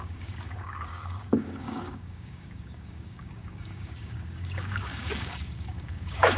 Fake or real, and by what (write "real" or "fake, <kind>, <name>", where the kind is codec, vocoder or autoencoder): fake, codec, DAC